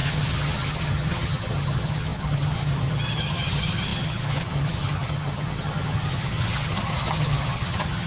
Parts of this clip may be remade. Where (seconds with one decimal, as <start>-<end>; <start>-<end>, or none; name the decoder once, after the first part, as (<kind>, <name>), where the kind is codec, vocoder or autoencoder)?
0.0-8.1 (vocoder, HiFi-GAN)